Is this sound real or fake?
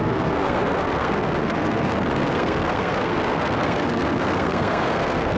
fake